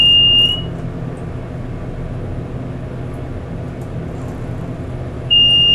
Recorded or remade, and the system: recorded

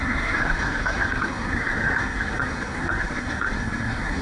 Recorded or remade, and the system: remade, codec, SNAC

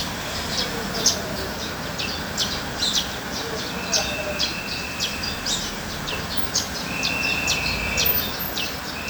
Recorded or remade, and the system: recorded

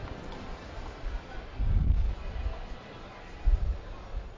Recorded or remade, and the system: recorded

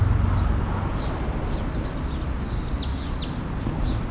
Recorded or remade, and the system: recorded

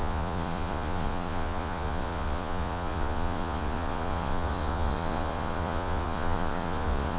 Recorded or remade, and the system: remade, vocoder, Vocos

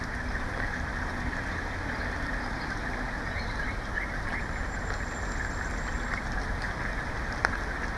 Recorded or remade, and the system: recorded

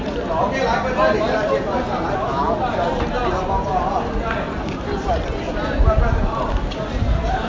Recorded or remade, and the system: recorded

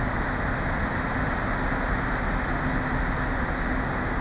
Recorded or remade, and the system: recorded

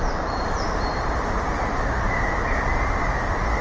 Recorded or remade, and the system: recorded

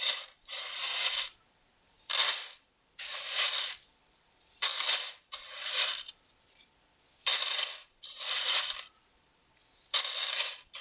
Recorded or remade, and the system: remade, vocoder, BigVGAN v2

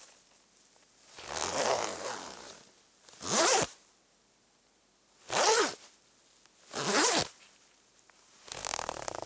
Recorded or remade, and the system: recorded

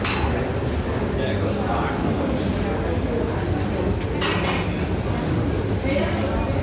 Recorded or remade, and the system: recorded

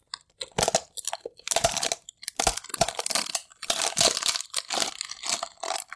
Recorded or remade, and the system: recorded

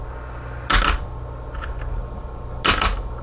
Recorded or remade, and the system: recorded